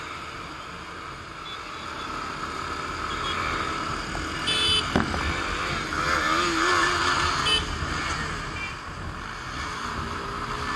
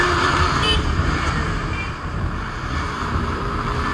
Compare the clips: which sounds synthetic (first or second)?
second